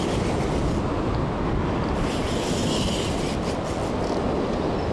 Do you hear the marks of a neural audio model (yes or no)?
no